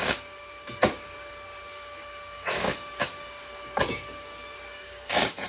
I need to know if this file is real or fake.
fake